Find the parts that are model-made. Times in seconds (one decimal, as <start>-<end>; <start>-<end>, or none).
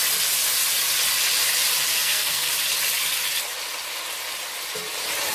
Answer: 1.9-2.5